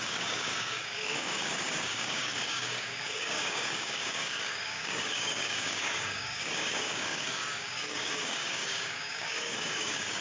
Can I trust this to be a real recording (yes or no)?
no